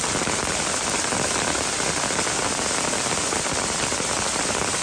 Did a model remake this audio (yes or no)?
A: no